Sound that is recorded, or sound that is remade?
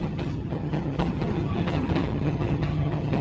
remade